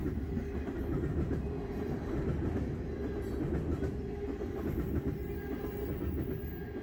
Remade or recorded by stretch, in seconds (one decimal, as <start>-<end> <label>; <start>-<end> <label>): 0.0-1.5 remade; 1.5-6.8 recorded